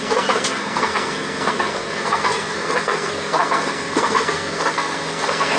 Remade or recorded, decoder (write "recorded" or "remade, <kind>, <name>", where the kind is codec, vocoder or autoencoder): remade, codec, SNAC